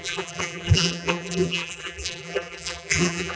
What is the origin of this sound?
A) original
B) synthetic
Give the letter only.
B